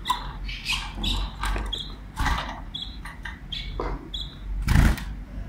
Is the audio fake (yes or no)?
no